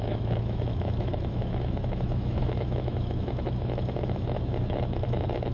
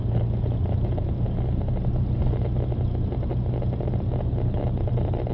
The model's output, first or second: first